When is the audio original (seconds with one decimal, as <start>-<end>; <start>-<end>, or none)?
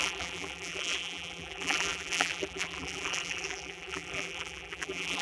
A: none